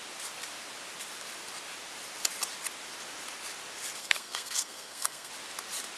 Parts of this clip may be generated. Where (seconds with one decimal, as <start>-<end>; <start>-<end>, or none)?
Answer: 4.0-5.3